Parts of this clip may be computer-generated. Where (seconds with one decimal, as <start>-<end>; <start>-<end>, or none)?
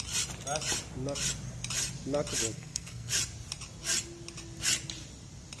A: 2.5-3.1